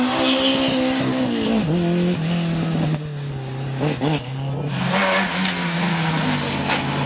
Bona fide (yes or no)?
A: yes